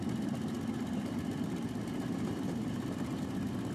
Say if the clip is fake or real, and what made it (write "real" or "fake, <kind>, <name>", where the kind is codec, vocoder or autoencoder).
real